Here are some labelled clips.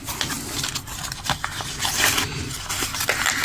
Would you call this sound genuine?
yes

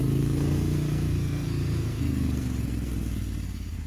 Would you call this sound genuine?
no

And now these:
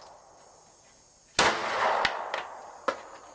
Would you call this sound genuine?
yes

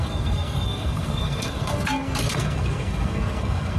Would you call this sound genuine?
no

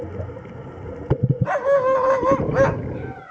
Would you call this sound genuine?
yes